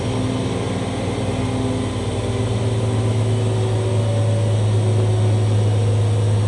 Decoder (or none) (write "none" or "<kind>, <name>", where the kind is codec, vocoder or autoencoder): none